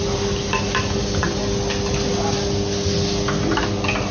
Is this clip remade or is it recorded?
recorded